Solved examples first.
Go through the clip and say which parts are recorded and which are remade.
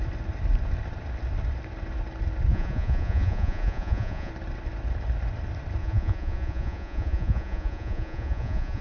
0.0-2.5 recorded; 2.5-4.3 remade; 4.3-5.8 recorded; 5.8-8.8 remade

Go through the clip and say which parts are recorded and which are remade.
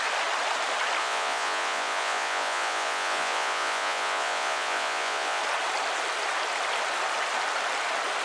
0.0-1.0 recorded; 1.0-5.4 remade; 5.4-8.2 recorded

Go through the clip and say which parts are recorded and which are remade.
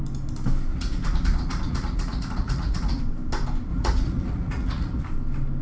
0.0-0.7 recorded; 0.7-3.0 remade; 3.0-3.7 recorded; 3.7-5.0 remade; 5.0-5.6 recorded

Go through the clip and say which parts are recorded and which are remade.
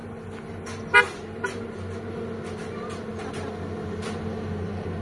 0.0-5.0 recorded